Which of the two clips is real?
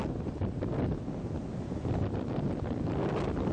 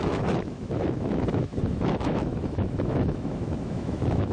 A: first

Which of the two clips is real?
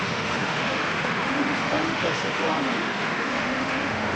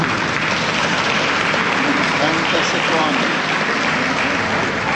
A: second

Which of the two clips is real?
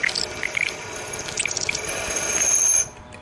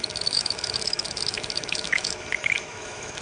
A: first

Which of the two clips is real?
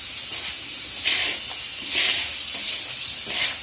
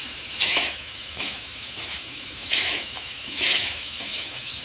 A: first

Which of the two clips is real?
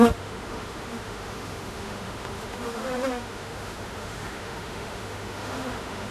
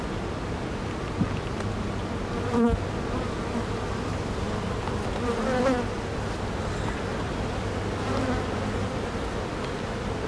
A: second